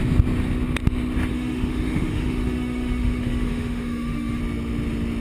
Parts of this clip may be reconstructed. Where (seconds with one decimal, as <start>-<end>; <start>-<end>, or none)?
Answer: 1.3-4.4